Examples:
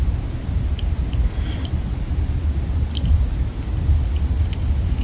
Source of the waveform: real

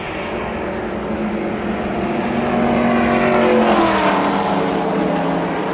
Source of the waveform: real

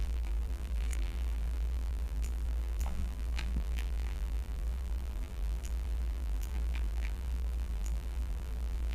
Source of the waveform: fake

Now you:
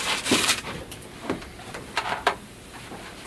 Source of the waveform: fake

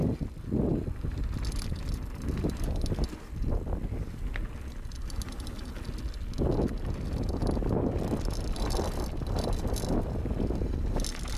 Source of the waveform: real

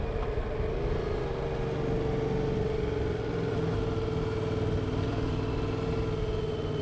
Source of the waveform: real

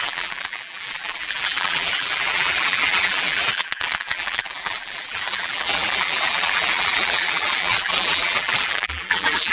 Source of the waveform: fake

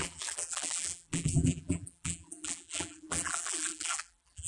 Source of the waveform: fake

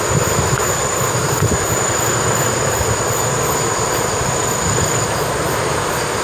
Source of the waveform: real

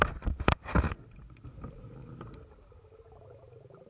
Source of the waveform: real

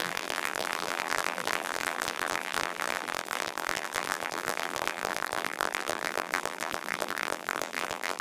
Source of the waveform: fake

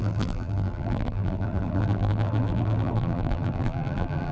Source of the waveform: fake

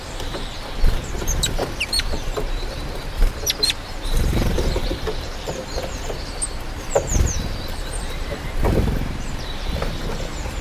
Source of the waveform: fake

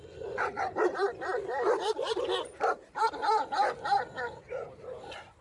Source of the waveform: fake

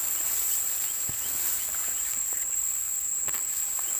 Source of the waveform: fake